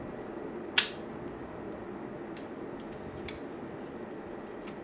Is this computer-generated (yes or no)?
no